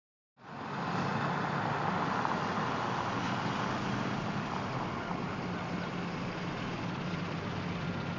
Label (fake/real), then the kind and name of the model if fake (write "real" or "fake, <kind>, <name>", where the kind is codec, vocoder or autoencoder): real